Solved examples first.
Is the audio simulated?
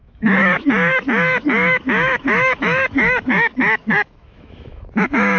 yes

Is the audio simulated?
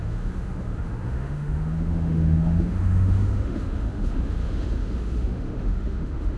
yes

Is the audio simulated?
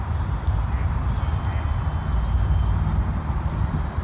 no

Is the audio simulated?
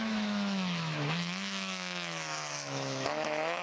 yes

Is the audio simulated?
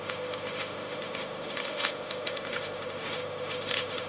yes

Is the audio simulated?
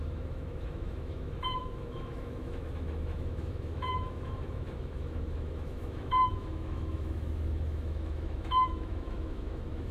yes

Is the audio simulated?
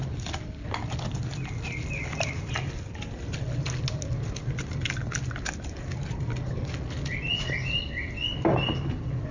no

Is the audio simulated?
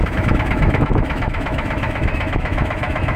yes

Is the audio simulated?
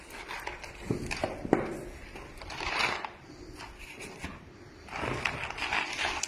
no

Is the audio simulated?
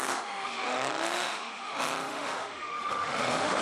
yes